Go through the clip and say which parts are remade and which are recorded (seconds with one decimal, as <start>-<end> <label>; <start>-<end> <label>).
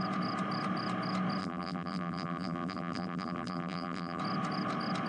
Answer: 0.0-1.4 recorded; 1.4-4.2 remade; 4.2-5.1 recorded